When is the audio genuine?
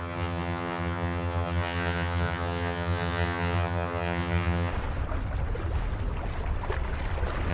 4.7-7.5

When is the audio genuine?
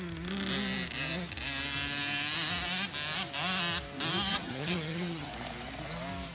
0.0-4.3; 5.3-6.3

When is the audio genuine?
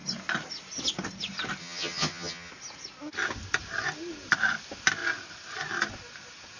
0.0-1.6; 2.5-6.6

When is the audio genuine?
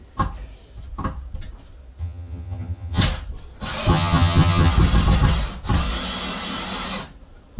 0.0-2.0; 3.0-3.9; 4.7-7.6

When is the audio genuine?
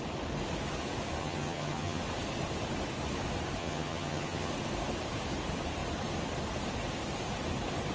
0.0-1.2; 2.0-3.6; 4.5-7.9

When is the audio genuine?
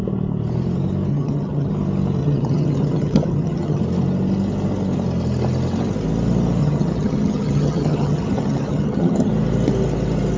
0.0-1.1; 1.7-2.2; 3.8-6.6; 9.3-10.4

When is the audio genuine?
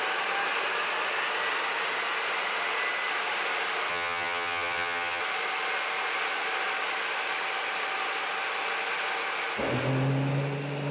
0.0-3.9; 5.2-10.9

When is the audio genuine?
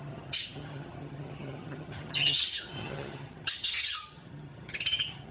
none